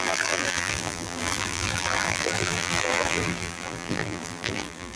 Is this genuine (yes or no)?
no